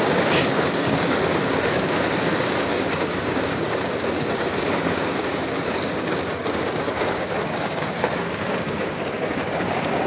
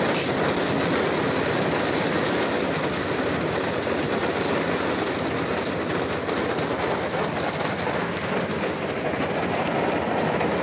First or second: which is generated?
first